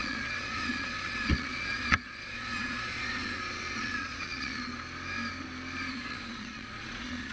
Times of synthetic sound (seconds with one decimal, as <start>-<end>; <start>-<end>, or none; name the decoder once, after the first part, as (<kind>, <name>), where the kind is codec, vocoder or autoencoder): 0.0-4.7 (vocoder, Vocos); 5.9-7.3